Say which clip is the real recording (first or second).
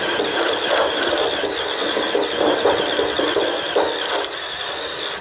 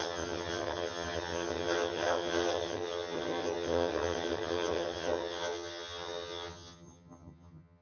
first